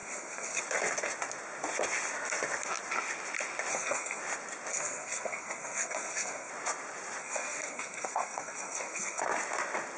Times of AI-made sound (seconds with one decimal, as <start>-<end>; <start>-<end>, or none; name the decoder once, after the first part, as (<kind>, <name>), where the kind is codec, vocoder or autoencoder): 0.0-0.6 (codec, SNAC); 3.7-4.2; 4.7-6.5; 7.2-9.2